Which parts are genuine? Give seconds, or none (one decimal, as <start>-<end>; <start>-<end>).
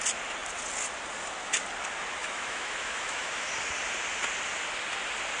0.0-2.2; 3.5-5.4